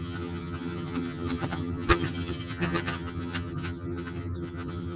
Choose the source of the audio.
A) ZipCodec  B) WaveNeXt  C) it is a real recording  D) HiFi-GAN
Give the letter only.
D